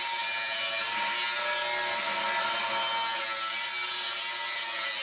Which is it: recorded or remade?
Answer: recorded